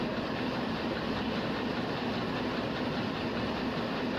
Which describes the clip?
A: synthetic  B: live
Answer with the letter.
B